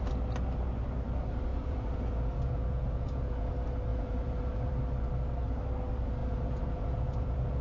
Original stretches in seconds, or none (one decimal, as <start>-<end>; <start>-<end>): 0.0-1.5; 3.5-3.9; 4.7-6.2